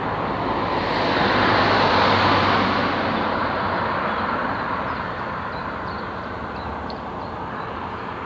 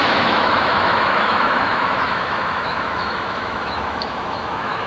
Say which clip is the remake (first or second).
second